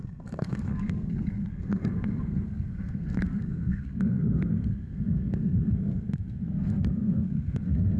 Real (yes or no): no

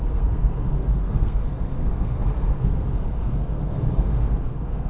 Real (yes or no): no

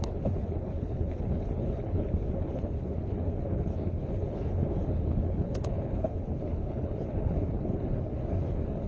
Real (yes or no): no